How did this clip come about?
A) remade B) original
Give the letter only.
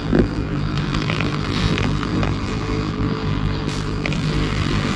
A